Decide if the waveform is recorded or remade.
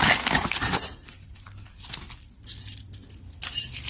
remade